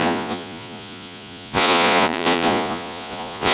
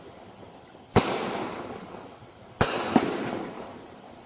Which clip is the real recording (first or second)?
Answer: second